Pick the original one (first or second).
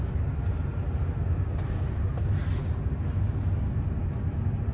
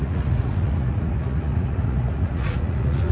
first